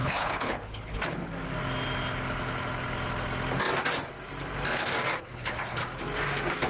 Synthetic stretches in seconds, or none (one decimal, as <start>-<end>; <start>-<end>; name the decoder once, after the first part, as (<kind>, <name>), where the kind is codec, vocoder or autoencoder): 0.0-1.2 (codec, HILCodec); 5.2-5.8